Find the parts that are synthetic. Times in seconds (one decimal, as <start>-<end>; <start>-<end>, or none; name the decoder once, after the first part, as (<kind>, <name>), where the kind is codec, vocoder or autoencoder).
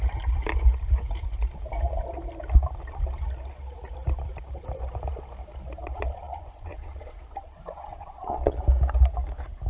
5.8-8.6 (vocoder, Vocos)